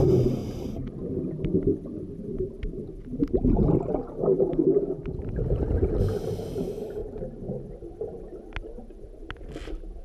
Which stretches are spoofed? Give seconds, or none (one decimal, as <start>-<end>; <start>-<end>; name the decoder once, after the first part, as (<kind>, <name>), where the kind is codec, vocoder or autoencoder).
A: 0.4-0.9 (vocoder, BigVGAN v2); 2.3-6.3; 7.0-7.7